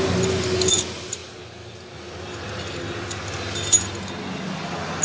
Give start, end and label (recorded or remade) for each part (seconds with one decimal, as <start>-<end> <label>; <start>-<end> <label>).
0.0-5.0 recorded